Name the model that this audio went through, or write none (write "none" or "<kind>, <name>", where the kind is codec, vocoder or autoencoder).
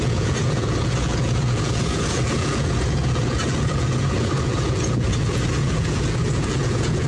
vocoder, Vocos